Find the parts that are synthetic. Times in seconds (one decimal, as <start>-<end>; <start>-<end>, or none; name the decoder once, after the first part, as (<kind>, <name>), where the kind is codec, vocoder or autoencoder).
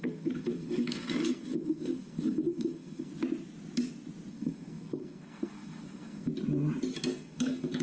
0.0-3.1 (codec, SNAC); 4.3-6.3; 7.1-7.8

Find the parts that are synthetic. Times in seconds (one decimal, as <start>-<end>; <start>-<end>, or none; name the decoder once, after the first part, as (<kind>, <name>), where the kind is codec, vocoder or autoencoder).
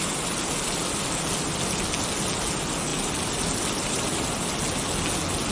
none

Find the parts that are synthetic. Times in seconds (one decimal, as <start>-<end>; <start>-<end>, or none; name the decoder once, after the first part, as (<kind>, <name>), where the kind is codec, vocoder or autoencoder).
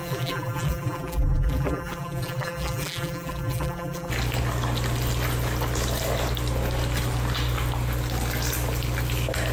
0.0-4.1 (vocoder, BigVGAN v2)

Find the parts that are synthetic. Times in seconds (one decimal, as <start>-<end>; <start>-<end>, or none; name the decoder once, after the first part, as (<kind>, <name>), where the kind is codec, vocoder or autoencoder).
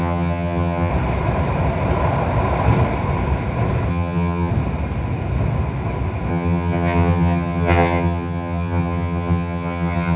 0.0-0.9 (vocoder, HiFi-GAN); 3.9-4.5; 6.3-10.2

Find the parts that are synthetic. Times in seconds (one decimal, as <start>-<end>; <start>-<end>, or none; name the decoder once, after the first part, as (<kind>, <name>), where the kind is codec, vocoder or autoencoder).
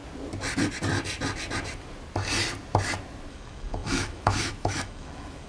3.3-5.5 (autoencoder, DAC-VAE)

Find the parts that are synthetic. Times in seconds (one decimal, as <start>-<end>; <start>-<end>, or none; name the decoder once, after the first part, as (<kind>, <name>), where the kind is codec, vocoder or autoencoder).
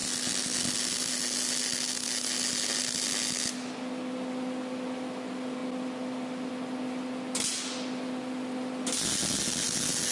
none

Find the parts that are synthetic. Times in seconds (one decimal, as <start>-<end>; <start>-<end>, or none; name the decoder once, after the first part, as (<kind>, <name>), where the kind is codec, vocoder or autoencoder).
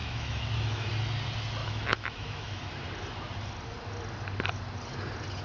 0.0-0.9 (autoencoder, DAC-VAE); 1.6-2.7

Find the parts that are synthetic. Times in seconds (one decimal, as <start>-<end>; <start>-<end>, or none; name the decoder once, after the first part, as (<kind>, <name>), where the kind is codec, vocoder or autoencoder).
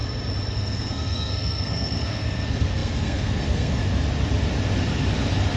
0.5-3.8 (codec, SNAC)